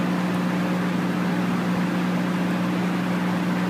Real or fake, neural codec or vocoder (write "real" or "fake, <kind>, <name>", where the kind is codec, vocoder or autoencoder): real